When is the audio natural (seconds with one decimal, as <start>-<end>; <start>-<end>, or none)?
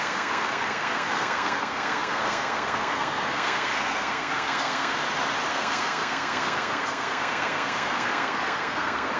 5.0-5.5